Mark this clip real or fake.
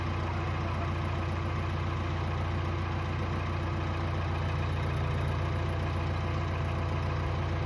real